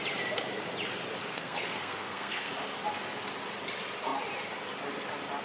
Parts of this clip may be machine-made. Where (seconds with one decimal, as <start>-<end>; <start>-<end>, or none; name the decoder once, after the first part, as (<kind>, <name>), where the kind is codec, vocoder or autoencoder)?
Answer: 1.2-2.5 (codec, SNAC)